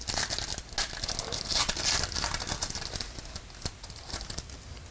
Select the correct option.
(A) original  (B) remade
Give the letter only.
A